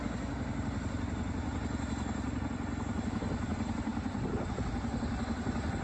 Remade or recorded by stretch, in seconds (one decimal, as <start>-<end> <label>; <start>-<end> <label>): 0.0-5.8 recorded